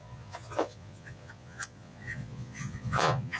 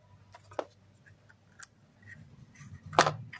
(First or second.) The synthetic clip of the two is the first